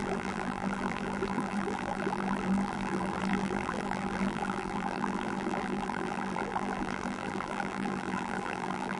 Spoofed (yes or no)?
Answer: yes